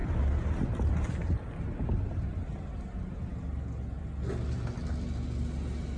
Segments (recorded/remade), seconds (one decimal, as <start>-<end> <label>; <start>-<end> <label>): 0.0-6.0 recorded